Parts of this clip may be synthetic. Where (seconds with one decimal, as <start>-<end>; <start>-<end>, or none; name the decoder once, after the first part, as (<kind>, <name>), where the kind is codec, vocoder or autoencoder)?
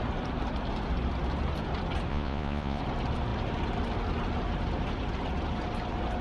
2.1-2.8 (vocoder, Vocos)